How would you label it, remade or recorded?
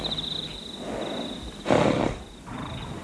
recorded